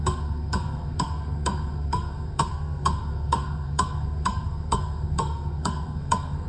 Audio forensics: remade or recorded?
remade